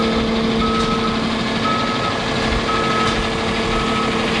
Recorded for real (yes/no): yes